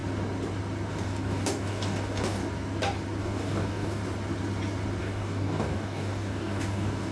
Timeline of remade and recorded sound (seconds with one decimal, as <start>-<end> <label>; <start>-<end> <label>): 0.0-0.9 recorded; 0.9-2.4 remade; 2.4-3.2 recorded; 3.2-4.0 remade; 4.0-5.0 recorded; 5.0-7.1 remade